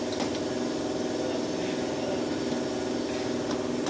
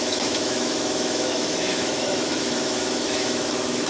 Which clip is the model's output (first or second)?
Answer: second